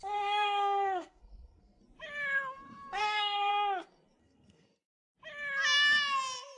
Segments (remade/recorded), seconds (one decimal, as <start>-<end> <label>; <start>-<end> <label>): 0.0-1.8 remade; 1.8-3.0 recorded; 3.0-3.5 remade; 3.5-4.2 recorded; 4.2-4.7 remade; 4.7-6.6 recorded